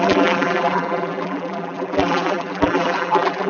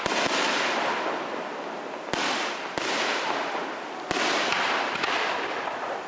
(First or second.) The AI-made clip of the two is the first